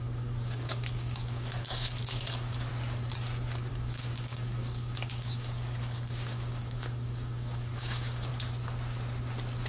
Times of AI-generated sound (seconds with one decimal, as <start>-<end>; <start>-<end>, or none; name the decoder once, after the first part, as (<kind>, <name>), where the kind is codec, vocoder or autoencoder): 0.0-2.7 (codec, DAC); 3.7-8.3